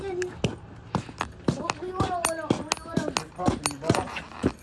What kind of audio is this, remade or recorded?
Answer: recorded